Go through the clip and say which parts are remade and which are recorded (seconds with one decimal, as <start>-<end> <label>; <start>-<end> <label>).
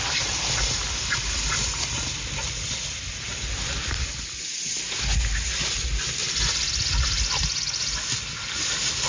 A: 0.0-9.1 recorded